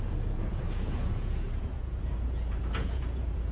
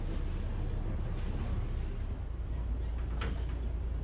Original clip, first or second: second